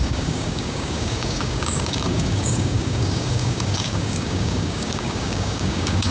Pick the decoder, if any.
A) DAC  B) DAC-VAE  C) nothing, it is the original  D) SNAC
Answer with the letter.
A